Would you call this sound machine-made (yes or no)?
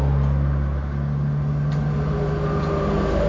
no